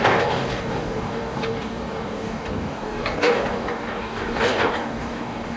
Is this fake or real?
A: fake